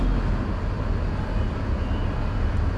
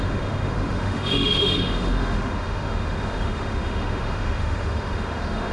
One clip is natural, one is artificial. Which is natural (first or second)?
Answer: first